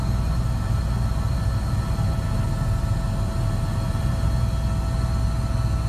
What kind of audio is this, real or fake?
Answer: real